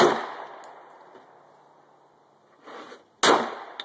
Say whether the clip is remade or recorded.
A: recorded